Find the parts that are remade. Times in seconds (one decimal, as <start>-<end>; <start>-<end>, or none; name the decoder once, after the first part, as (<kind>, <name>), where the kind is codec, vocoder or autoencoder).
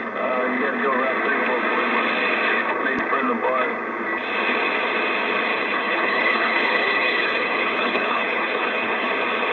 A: 5.5-9.1 (codec, HILCodec)